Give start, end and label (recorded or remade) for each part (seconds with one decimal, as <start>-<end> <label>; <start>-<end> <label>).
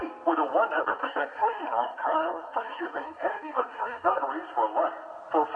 0.0-0.8 recorded; 0.8-4.2 remade; 4.2-5.6 recorded